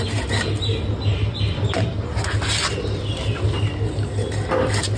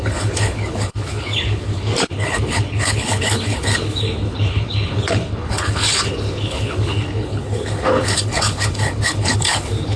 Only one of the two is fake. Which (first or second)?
second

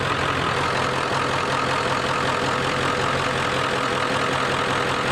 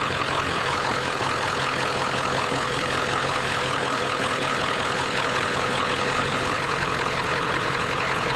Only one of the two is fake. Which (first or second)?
second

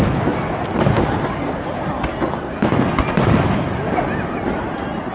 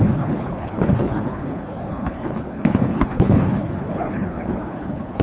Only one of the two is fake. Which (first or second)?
second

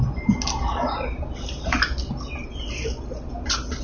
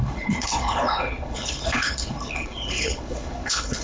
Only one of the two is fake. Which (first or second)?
second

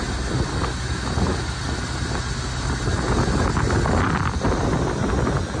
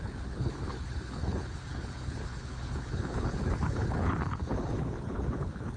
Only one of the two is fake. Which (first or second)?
second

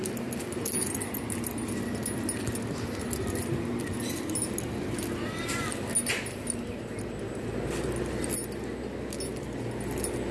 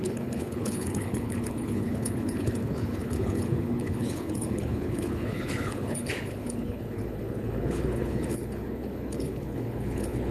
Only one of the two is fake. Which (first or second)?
second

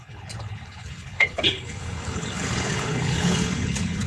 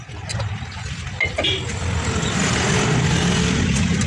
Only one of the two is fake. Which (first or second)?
first